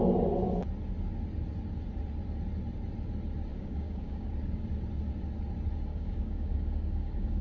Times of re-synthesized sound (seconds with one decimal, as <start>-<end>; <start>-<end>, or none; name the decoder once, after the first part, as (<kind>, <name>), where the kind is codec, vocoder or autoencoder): 3.5-4.3 (codec, DAC); 5.9-7.4